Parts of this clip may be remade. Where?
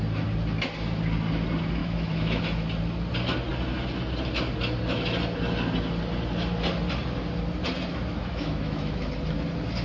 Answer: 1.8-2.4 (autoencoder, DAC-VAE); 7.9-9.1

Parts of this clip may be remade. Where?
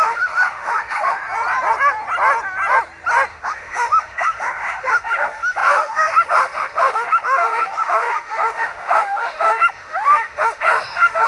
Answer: 0.0-1.2 (autoencoder, DAC-VAE); 3.3-11.3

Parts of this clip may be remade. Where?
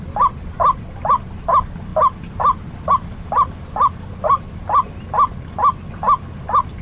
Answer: none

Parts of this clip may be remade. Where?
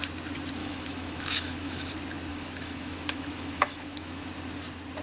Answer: 0.6-1.9 (autoencoder, DAC-VAE); 2.3-4.3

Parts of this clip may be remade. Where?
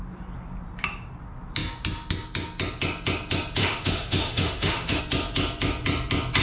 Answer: 3.6-5.0 (autoencoder, DAC-VAE)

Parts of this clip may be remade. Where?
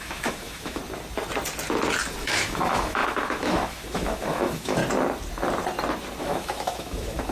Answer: 0.0-0.8 (autoencoder, DAC-VAE); 2.2-4.8; 6.2-7.3